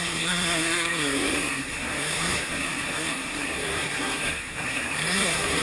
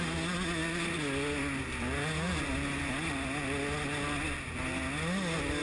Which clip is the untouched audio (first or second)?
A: second